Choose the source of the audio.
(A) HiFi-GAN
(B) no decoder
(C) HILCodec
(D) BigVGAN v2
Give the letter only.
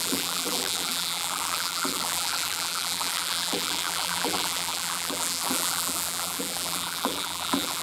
D